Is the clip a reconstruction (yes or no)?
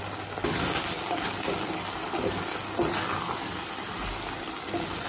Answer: no